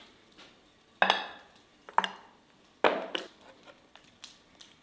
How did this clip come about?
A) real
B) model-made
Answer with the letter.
A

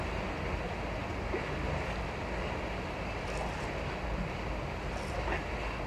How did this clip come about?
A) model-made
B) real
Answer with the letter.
B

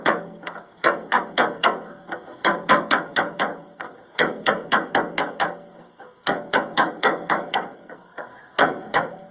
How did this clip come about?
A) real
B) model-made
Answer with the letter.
B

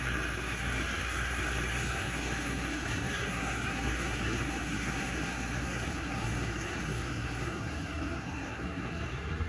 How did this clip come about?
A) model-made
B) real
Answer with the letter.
A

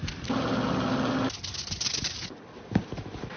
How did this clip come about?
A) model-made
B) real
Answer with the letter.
B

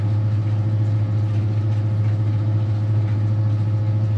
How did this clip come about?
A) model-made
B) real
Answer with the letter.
B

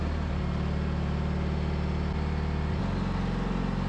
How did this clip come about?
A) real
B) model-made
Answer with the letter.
A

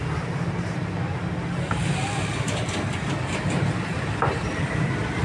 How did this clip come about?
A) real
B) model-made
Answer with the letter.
A